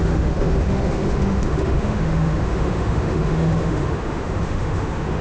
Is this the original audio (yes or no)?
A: no